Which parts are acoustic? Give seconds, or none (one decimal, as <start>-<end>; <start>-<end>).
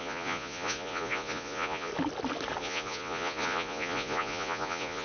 1.9-2.6